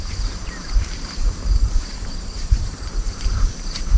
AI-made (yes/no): yes